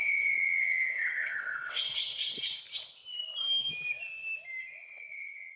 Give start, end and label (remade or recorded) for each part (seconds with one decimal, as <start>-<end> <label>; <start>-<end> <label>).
0.0-2.6 remade; 2.6-4.6 recorded; 4.6-5.6 remade